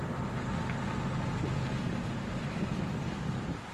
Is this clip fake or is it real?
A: real